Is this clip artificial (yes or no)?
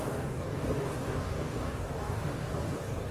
yes